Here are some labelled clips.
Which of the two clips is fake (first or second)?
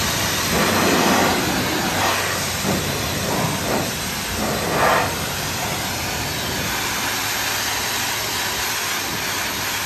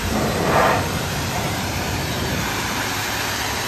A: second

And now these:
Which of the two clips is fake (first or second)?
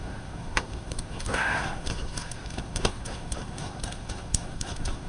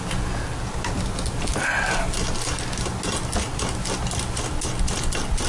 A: first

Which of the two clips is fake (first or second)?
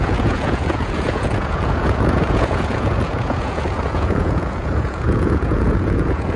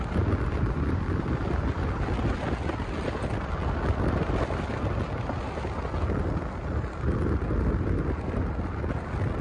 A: first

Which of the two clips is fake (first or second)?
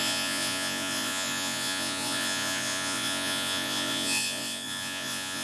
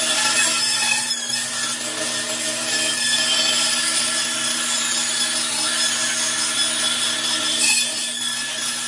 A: first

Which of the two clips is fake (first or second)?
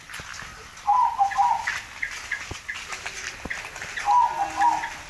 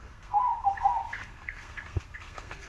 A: second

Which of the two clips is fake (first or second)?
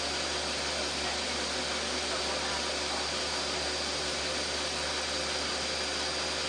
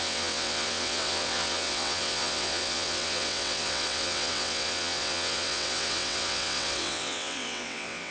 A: second